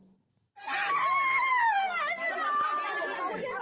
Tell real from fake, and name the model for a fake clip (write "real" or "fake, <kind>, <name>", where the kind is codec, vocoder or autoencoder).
fake, vocoder, BigVGAN v2